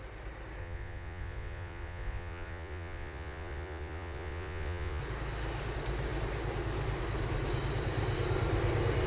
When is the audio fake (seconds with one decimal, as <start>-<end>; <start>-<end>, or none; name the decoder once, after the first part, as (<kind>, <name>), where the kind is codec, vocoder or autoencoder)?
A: 0.6-5.0 (vocoder, Vocos)